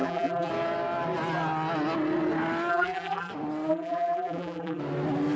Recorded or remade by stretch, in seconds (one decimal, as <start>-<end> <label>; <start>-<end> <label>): 0.0-0.5 remade; 0.5-2.7 recorded; 2.7-3.3 remade; 3.3-3.7 recorded; 3.7-4.8 remade; 4.8-5.4 recorded